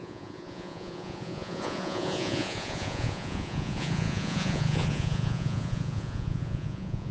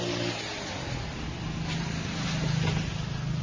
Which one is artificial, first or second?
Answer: first